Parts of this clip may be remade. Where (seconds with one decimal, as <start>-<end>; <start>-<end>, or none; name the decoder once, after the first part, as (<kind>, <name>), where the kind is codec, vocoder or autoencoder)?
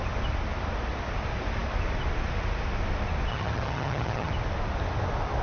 3.3-4.3 (vocoder, HiFi-GAN)